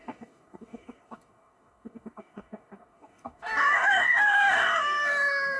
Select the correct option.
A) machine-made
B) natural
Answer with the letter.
A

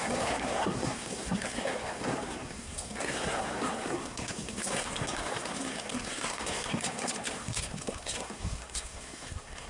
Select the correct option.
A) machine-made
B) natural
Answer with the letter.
A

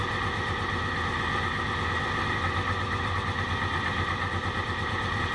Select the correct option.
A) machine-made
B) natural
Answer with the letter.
B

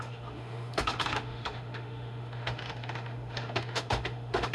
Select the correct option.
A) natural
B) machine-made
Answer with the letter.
B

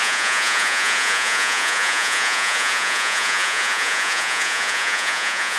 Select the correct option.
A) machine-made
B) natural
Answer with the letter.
A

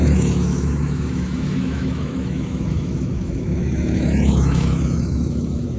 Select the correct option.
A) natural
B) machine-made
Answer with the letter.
B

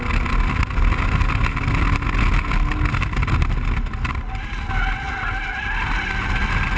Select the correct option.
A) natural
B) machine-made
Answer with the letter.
A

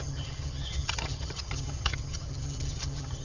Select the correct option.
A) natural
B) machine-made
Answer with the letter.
B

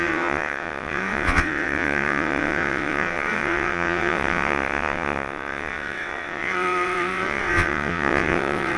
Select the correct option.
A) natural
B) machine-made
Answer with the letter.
B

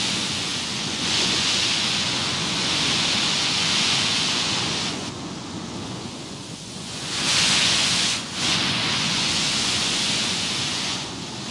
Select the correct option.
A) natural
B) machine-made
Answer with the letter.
B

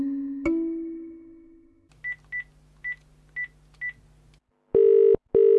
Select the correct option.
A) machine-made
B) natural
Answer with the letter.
B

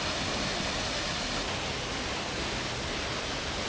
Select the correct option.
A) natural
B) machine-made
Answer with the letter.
A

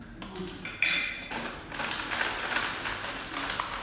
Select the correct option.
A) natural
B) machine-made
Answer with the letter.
A